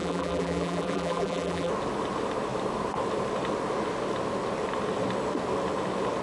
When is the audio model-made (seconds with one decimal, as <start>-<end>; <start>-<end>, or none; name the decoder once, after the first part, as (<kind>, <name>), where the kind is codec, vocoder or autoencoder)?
0.0-1.7 (vocoder, BigVGAN v2)